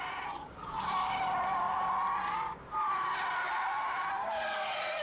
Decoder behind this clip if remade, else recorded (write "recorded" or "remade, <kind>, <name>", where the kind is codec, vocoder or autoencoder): recorded